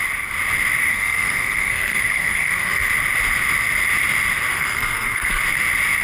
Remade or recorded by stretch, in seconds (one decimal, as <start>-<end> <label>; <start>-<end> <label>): 0.0-0.9 recorded; 0.9-2.9 remade; 2.9-4.5 recorded; 4.5-5.4 remade; 5.4-6.0 recorded